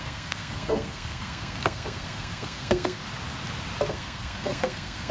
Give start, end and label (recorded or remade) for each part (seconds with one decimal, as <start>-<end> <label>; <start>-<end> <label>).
0.0-3.0 remade; 3.0-3.9 recorded; 3.9-5.1 remade